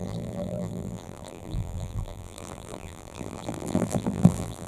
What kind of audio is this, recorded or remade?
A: remade